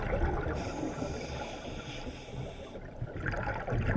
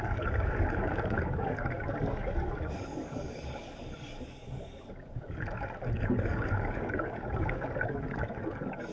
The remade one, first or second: second